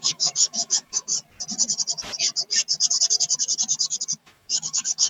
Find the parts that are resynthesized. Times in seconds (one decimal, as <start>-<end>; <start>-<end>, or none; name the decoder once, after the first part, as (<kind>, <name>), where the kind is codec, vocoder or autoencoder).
0.0-1.1 (autoencoder, DAC-VAE); 4.2-5.1